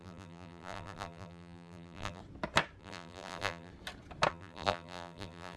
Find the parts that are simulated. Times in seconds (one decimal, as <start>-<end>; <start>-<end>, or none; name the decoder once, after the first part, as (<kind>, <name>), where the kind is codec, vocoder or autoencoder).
0.0-2.2 (vocoder, BigVGAN v2); 2.8-3.7; 4.3-5.6